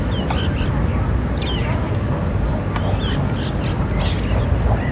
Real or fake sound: real